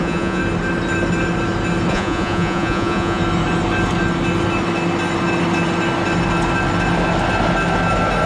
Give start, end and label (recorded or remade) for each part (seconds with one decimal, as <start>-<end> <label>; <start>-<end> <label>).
0.0-0.4 remade; 0.4-1.9 recorded; 1.9-3.2 remade; 3.2-8.3 recorded